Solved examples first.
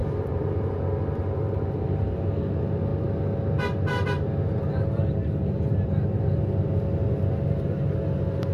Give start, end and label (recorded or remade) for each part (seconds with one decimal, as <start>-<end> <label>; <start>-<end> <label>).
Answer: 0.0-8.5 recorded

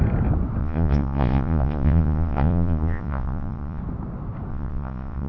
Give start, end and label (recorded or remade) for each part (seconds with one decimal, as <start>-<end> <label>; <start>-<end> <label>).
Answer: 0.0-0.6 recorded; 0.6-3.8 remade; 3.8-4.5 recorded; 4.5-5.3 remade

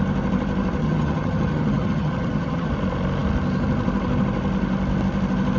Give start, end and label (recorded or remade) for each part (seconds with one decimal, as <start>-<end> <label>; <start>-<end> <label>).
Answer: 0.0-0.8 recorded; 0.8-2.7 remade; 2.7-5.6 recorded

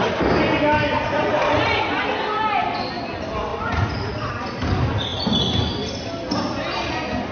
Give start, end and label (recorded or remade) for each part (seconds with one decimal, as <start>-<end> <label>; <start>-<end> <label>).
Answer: 0.0-0.9 recorded; 0.9-2.0 remade; 2.0-3.5 recorded; 3.5-4.3 remade; 4.3-7.3 recorded

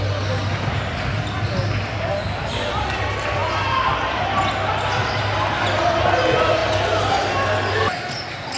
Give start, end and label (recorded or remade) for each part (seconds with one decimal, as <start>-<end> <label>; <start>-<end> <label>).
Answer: 0.0-8.6 recorded

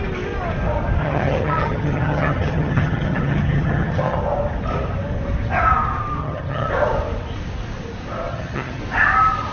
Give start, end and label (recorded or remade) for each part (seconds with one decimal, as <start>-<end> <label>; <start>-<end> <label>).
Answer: 0.0-1.0 recorded; 1.0-4.2 remade; 4.2-6.2 recorded; 6.2-6.7 remade; 6.7-8.3 recorded; 8.3-8.8 remade; 8.8-9.5 recorded